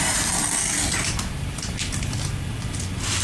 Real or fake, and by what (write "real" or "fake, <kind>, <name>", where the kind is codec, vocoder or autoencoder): real